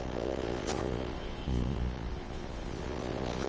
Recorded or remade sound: remade